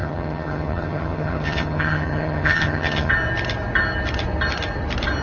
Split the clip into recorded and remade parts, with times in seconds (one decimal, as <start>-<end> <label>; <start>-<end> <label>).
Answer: 0.0-3.1 remade; 3.1-5.2 recorded